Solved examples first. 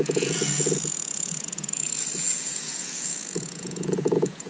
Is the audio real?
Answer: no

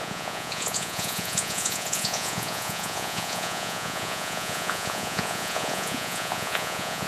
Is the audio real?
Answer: no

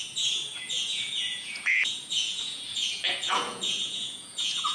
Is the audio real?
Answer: no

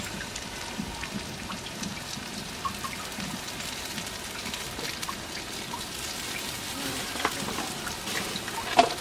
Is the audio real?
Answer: yes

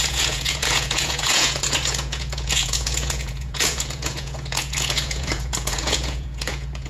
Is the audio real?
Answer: no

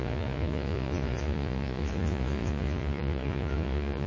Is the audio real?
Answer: no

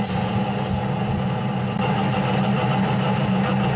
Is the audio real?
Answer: yes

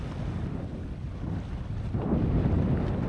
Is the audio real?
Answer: yes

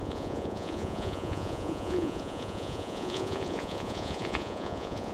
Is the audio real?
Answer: no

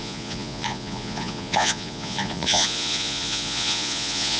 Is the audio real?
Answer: no